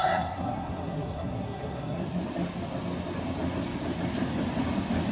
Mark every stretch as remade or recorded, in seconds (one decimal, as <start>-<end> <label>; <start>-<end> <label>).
0.0-2.0 remade; 2.0-5.1 recorded

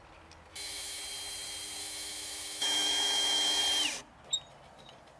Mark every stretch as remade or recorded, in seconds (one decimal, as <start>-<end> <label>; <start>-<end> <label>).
0.0-0.5 recorded; 0.5-1.0 remade; 1.0-1.8 recorded; 1.8-3.6 remade; 3.6-5.2 recorded

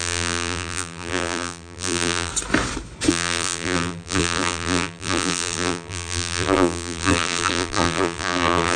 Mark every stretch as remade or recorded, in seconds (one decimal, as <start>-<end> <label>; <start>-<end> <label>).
0.0-2.3 remade; 2.3-3.1 recorded; 3.1-8.8 remade

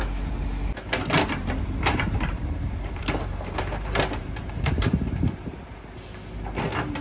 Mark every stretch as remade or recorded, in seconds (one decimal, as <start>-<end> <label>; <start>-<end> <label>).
0.0-1.9 recorded; 1.9-3.0 remade; 3.0-4.2 recorded; 4.2-5.6 remade; 5.6-7.0 recorded

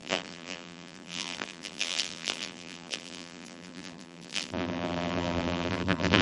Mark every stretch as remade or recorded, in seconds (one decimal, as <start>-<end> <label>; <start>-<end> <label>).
0.0-6.2 remade

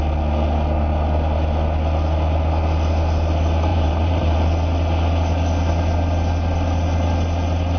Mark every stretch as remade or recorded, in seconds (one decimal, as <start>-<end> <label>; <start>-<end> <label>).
0.0-3.7 recorded; 3.7-4.5 remade; 4.5-7.8 recorded

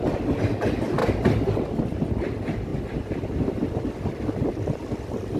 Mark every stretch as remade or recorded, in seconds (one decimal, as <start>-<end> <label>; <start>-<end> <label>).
0.0-1.0 recorded; 1.0-1.5 remade; 1.5-5.4 recorded